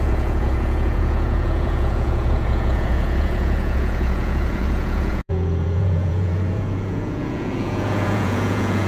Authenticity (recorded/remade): remade